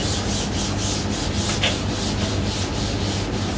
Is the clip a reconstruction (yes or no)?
no